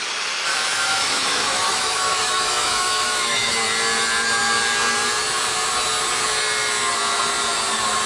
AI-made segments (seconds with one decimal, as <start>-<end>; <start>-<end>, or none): 0.5-3.5